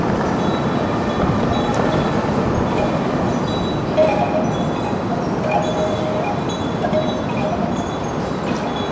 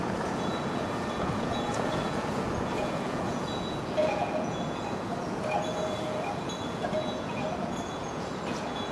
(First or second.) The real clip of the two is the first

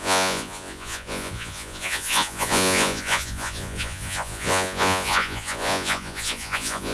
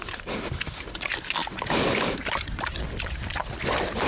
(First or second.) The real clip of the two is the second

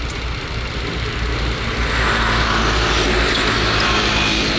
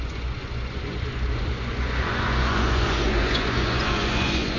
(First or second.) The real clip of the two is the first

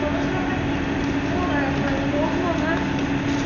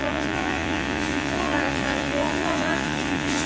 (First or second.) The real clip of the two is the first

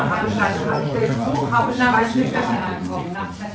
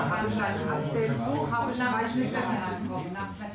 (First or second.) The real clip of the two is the second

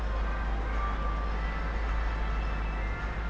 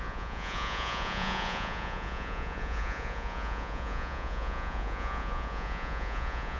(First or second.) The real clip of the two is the first